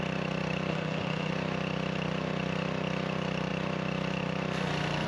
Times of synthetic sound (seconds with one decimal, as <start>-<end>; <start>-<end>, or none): 0.7-1.3